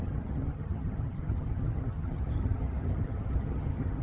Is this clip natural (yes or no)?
no